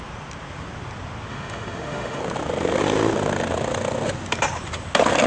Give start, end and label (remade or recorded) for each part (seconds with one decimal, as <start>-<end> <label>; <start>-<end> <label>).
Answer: 0.0-1.3 recorded; 1.3-2.2 remade; 2.2-5.3 recorded